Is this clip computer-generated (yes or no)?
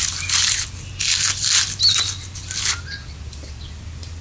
no